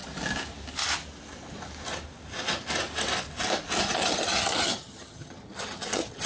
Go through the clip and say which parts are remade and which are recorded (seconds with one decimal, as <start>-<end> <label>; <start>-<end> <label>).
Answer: 0.0-3.8 recorded; 3.8-6.3 remade